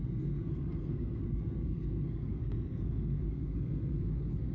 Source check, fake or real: fake